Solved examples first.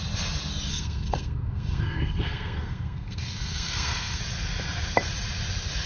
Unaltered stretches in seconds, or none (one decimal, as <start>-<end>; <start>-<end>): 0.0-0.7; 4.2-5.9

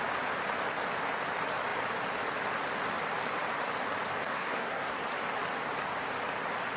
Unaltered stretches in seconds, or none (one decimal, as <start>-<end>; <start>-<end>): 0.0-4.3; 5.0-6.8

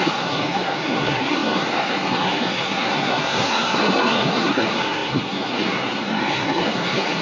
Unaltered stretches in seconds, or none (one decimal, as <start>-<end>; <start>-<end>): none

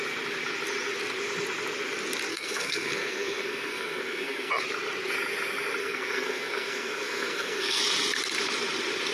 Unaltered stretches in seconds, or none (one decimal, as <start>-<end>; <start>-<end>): 0.0-2.3; 4.5-5.8; 7.8-9.1

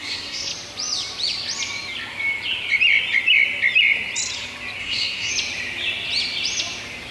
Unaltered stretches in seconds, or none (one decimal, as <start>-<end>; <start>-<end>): 0.5-4.8; 5.3-7.1

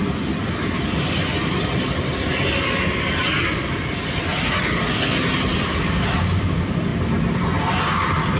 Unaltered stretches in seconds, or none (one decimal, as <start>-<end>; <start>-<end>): 0.0-8.4

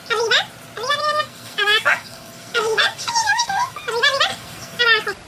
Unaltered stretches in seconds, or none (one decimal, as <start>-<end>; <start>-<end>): 0.0-1.0; 3.8-4.3; 4.8-5.3